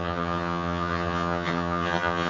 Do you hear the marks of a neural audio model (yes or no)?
yes